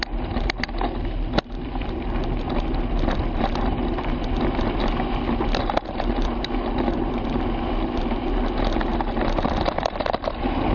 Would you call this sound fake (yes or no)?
no